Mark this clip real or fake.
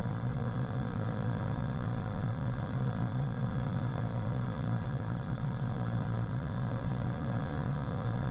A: fake